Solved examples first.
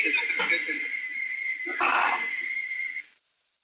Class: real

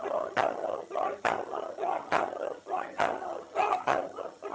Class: fake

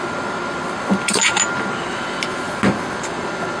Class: real